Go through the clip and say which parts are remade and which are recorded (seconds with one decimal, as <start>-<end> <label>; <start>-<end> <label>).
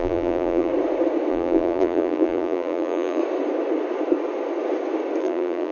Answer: 0.0-0.7 remade; 0.7-1.3 recorded; 1.3-3.2 remade; 3.2-5.2 recorded; 5.2-5.7 remade